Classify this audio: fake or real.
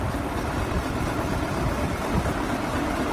real